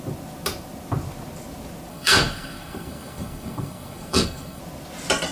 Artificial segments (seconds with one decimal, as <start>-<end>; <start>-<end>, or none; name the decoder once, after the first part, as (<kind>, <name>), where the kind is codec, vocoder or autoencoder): 1.9-4.6 (codec, SNAC)

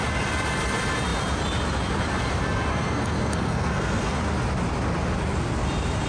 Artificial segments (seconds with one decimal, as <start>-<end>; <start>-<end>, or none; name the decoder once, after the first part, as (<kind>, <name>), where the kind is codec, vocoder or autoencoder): 2.7-4.2 (codec, SNAC)